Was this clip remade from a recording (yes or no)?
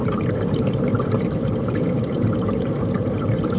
yes